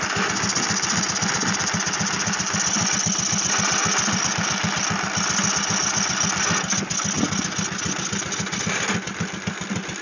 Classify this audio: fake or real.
real